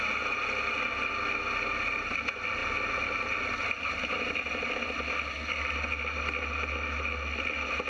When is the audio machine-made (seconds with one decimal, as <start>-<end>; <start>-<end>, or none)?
none